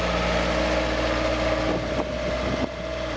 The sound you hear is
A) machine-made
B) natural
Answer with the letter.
B